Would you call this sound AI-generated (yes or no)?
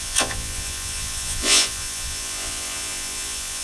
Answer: yes